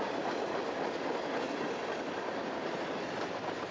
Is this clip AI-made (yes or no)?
no